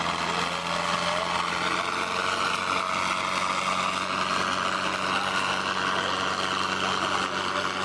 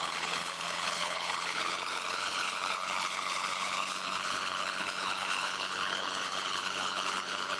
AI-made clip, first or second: second